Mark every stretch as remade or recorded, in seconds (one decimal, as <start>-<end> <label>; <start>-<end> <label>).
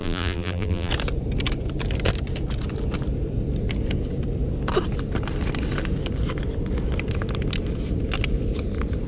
0.0-0.9 remade; 0.9-9.1 recorded